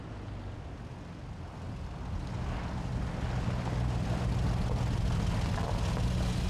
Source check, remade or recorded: recorded